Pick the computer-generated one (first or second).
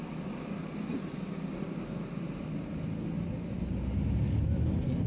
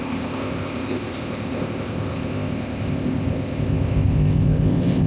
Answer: second